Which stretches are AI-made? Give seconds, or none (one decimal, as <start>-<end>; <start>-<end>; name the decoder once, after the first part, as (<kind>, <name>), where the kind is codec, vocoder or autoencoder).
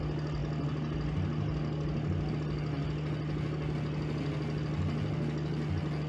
none